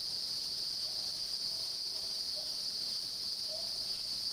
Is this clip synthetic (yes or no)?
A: yes